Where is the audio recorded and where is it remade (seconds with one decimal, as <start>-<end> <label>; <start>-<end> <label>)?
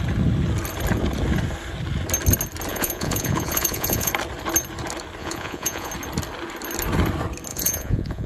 0.0-2.7 recorded; 2.7-4.1 remade; 4.1-5.2 recorded; 5.2-5.9 remade; 5.9-7.5 recorded; 7.5-8.3 remade